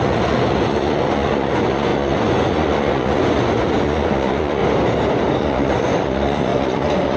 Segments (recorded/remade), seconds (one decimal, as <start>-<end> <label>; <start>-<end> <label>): 0.0-4.6 remade; 4.6-5.4 recorded; 5.4-7.2 remade